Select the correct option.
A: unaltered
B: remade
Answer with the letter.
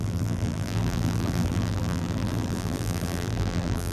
B